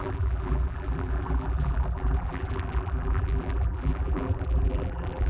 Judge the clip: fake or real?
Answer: fake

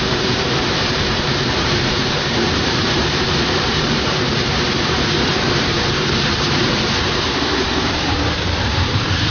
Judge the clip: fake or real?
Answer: fake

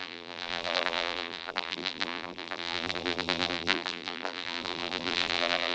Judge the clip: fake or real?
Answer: fake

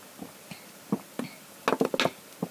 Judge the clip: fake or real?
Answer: real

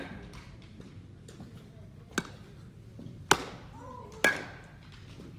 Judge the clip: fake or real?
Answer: real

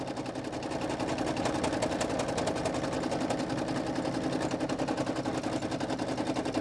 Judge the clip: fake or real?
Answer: real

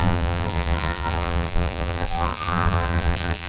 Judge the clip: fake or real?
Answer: fake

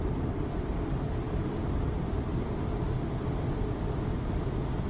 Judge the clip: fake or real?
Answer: real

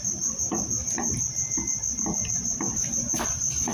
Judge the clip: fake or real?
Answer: fake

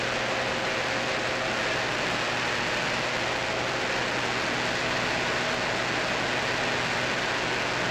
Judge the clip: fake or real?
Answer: real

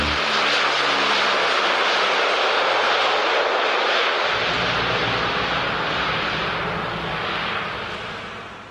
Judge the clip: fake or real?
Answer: real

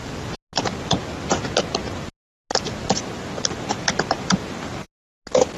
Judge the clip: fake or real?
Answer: real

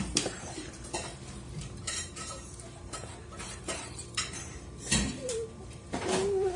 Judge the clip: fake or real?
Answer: fake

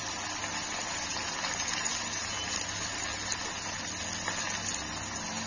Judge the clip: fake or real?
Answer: real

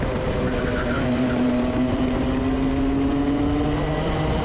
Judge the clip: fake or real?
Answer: real